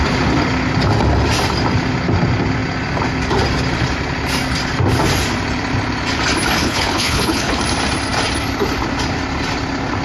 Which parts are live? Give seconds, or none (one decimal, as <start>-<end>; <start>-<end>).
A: 0.0-6.6; 7.6-10.0